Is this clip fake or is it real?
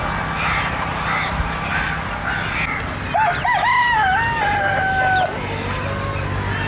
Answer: real